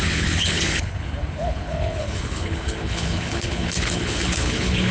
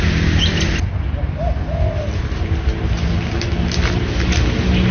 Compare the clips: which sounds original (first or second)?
second